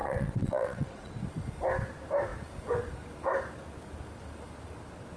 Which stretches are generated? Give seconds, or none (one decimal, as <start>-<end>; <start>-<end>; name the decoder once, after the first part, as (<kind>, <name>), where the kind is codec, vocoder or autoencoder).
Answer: 0.0-1.1 (vocoder, WaveNeXt)